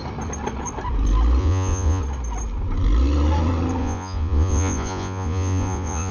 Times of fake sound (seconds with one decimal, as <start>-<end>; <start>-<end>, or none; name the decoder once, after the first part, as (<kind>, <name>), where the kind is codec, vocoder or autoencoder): 1.4-2.0 (vocoder, Vocos); 3.8-6.1